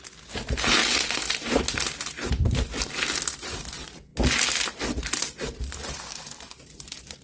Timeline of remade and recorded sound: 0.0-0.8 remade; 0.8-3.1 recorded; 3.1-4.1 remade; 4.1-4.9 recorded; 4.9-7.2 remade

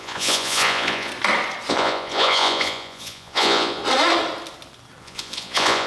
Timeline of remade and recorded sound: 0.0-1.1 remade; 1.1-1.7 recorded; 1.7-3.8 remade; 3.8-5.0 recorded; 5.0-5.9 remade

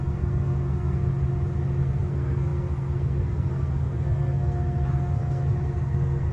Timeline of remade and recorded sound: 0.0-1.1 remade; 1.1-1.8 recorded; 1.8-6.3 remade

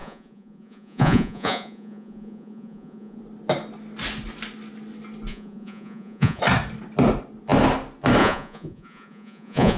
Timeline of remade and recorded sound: 0.0-3.2 remade; 3.2-5.3 recorded; 5.3-6.4 remade; 6.4-8.2 recorded; 8.2-9.8 remade

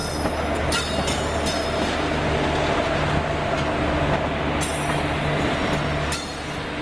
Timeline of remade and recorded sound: 0.0-6.8 recorded